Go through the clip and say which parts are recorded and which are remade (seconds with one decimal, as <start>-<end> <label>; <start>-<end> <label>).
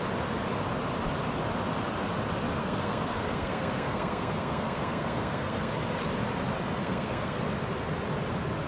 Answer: 0.0-2.6 recorded; 2.6-5.7 remade; 5.7-6.8 recorded; 6.8-7.4 remade; 7.4-8.7 recorded